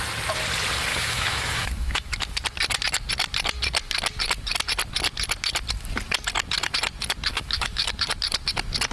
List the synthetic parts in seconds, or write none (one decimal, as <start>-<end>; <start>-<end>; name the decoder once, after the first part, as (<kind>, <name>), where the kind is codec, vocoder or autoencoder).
0.9-2.4 (autoencoder, DAC-VAE); 7.3-7.9